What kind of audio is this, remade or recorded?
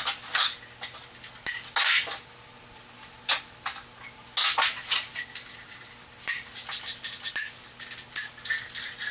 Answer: recorded